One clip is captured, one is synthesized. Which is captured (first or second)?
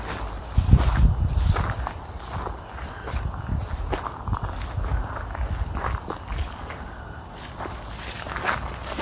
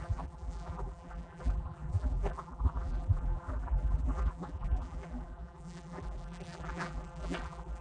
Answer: first